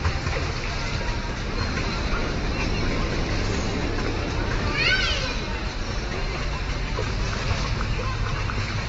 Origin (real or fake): real